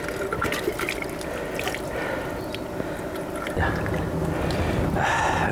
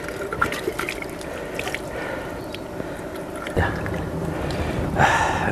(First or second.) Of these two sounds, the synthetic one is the second